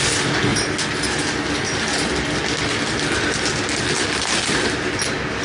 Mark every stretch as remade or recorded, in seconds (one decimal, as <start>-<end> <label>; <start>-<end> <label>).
0.0-5.4 recorded